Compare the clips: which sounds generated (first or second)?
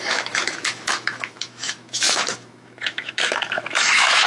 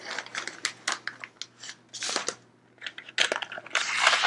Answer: first